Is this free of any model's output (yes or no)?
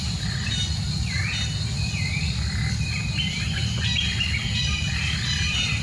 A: yes